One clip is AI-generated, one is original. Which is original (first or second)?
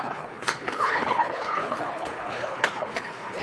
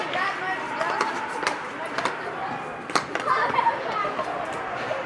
second